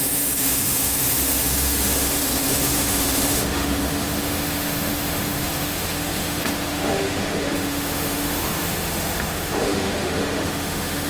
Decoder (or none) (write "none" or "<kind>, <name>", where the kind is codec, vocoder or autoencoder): autoencoder, DAC-VAE